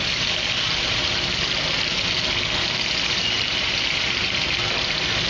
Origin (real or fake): fake